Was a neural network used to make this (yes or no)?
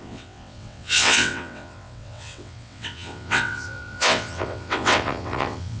yes